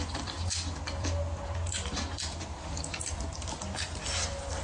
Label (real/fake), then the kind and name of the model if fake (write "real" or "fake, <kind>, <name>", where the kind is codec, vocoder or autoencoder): real